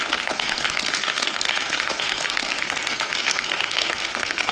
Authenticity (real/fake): fake